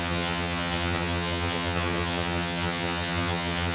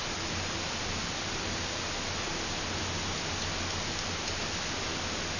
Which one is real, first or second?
second